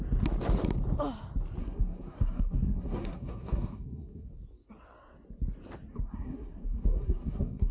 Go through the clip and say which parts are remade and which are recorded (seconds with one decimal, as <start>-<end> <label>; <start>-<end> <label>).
0.0-1.6 recorded; 1.6-4.3 remade; 4.3-5.9 recorded; 5.9-7.7 remade

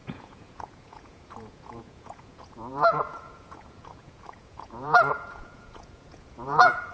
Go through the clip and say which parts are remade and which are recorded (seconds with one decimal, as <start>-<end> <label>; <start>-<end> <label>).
0.0-6.9 remade